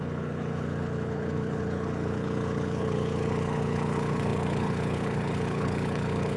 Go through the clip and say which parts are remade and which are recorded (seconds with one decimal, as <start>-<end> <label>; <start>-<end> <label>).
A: 0.0-6.4 remade